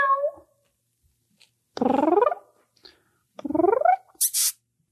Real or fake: real